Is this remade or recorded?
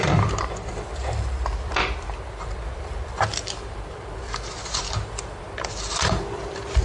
remade